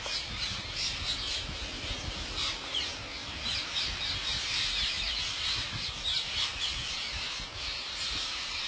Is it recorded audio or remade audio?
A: recorded